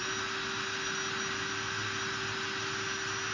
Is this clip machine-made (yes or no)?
no